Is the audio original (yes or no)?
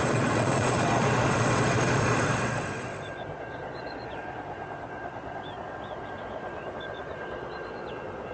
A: no